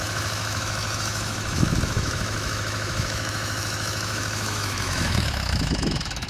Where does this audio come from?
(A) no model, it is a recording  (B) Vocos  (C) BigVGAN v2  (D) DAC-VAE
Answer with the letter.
D